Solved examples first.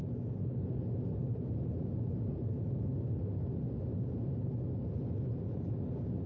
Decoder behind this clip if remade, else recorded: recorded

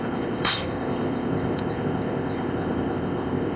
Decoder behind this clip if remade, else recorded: remade, codec, ZipCodec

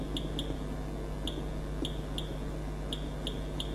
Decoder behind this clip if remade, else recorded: recorded